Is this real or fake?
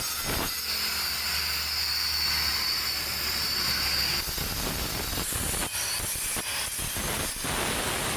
real